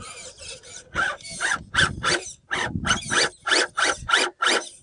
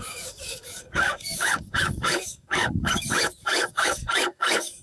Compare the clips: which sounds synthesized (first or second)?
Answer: second